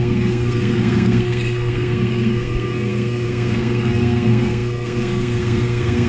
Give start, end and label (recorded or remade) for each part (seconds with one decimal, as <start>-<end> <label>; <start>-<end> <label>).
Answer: 0.0-6.1 remade